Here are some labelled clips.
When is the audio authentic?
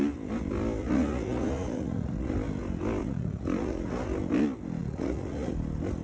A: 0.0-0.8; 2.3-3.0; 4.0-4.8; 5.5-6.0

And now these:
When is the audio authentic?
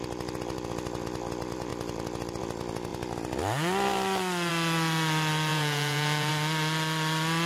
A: 0.0-5.5; 6.3-7.5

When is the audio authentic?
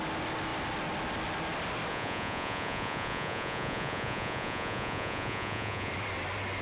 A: 0.0-1.9; 5.9-6.6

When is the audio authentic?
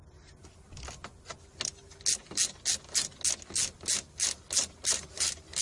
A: 0.0-5.6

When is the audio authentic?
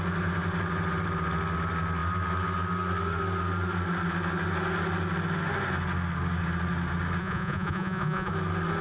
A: 0.0-7.2; 8.3-8.8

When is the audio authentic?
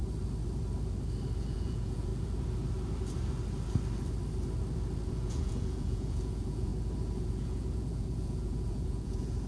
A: 0.0-1.5; 2.1-5.1; 6.7-7.2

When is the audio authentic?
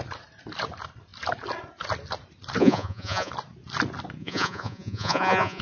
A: 0.0-2.6; 3.3-4.2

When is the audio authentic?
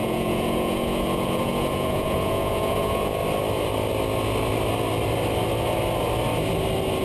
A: 3.2-7.0